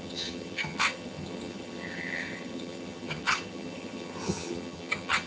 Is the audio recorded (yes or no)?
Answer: no